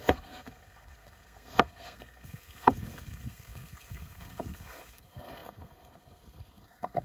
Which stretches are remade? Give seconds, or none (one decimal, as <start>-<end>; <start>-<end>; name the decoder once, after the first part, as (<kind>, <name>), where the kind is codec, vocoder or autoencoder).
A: 0.0-7.0 (codec, SNAC)